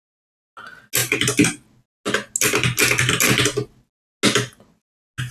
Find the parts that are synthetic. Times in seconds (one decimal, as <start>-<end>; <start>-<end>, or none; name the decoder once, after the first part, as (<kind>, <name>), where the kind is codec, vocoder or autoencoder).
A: none